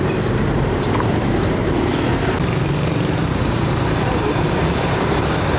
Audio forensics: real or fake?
fake